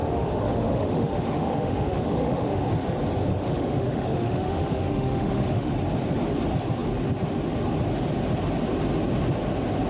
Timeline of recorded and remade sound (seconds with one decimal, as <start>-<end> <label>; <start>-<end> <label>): 0.0-2.7 remade; 2.7-3.3 recorded; 3.3-5.7 remade; 5.7-9.9 recorded